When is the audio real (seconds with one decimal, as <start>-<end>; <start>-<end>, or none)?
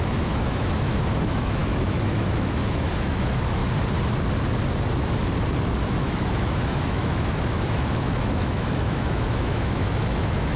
3.6-5.9